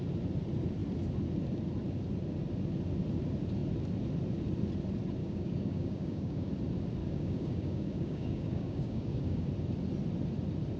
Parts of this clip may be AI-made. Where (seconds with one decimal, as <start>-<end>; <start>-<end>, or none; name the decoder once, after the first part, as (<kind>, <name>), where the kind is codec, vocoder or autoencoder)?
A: 5.2-6.5 (codec, DAC); 7.0-9.5